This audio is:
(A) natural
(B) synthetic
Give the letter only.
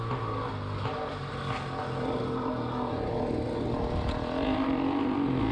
A